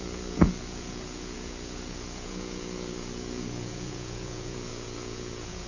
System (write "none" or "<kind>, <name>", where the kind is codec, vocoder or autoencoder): vocoder, Vocos